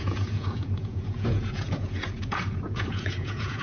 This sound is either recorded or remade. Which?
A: remade